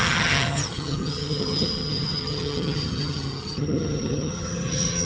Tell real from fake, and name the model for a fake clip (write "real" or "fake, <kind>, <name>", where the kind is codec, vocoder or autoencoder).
fake, vocoder, HiFi-GAN